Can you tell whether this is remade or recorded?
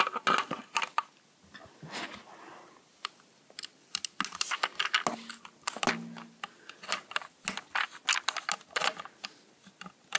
recorded